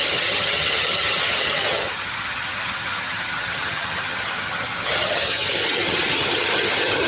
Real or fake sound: fake